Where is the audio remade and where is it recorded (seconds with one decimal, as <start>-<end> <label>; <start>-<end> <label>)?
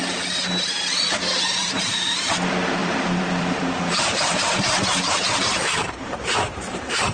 0.0-1.3 recorded; 1.3-7.1 remade